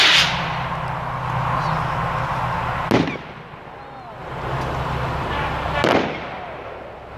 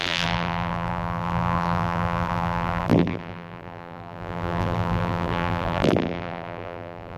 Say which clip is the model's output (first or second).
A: second